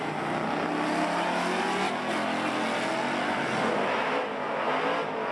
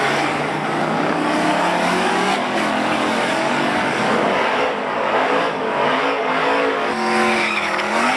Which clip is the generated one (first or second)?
second